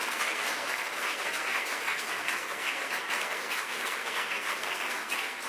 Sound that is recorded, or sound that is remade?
remade